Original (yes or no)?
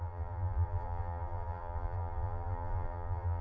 no